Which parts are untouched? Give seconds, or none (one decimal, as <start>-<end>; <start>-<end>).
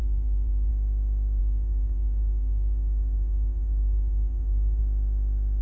0.7-1.4; 4.8-5.6